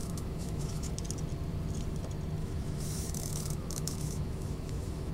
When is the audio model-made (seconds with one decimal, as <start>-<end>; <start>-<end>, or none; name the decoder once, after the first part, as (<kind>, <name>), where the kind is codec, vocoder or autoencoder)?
0.0-0.9 (autoencoder, DAC-VAE); 2.4-5.1